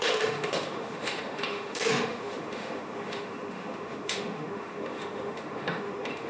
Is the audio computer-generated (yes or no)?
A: yes